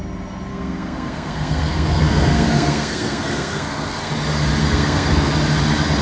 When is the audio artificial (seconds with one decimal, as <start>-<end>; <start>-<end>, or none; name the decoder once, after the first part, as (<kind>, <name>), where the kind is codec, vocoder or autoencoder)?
0.5-4.1 (codec, SNAC); 4.6-5.3